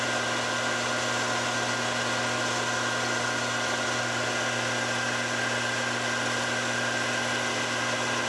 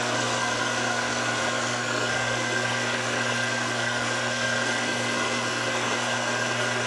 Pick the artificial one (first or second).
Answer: second